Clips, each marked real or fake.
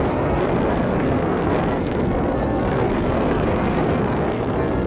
fake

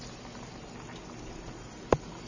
real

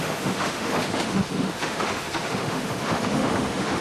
fake